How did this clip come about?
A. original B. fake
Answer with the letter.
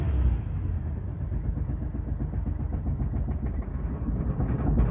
A